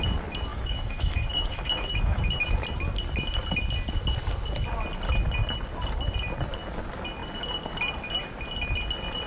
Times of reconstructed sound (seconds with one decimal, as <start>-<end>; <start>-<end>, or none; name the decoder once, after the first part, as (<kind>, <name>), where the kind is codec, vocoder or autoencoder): 0.5-2.5 (autoencoder, DAC-VAE)